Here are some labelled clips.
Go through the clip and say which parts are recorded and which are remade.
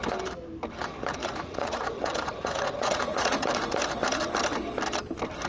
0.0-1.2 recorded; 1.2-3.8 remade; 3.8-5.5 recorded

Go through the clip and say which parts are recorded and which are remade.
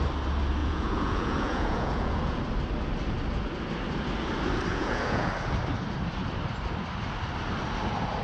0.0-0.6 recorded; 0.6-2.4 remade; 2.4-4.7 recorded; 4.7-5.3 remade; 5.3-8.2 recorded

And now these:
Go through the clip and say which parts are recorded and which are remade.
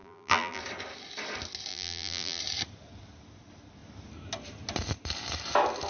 0.0-0.6 remade; 0.6-1.7 recorded; 1.7-2.4 remade; 2.4-5.9 recorded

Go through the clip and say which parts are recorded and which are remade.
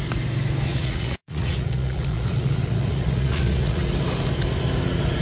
0.0-0.7 recorded; 0.7-3.8 remade; 3.8-5.2 recorded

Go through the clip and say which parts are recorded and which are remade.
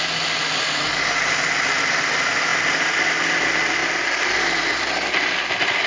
0.0-5.9 recorded